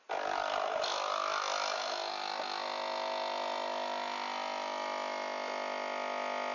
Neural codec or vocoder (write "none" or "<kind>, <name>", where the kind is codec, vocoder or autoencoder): none